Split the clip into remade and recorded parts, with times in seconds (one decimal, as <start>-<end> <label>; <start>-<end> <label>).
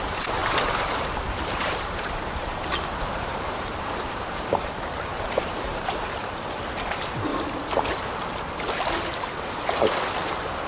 0.0-2.5 remade; 2.5-3.1 recorded; 3.1-7.3 remade; 7.3-10.7 recorded